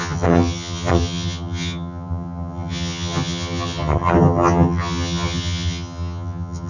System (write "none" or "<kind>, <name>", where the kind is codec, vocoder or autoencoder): vocoder, HiFi-GAN